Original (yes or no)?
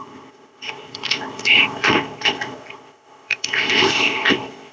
no